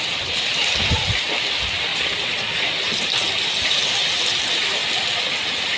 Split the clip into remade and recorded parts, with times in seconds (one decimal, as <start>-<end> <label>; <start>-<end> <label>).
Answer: 0.0-1.9 recorded; 1.9-2.6 remade; 2.6-5.8 recorded